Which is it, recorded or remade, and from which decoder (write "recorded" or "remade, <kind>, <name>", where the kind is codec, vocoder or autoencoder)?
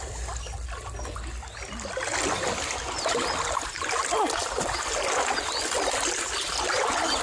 recorded